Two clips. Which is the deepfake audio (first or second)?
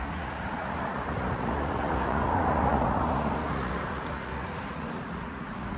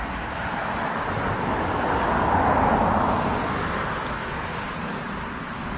first